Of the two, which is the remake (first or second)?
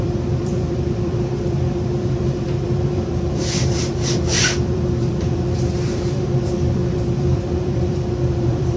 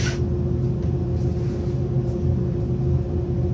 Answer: first